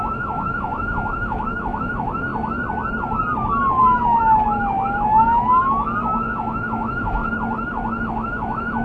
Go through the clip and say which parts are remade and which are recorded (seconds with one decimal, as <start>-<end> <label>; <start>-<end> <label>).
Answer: 0.0-2.3 remade; 2.3-4.2 recorded; 4.2-7.2 remade; 7.2-8.1 recorded; 8.1-8.8 remade